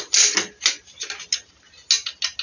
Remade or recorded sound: recorded